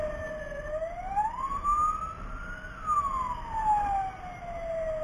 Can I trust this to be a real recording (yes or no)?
yes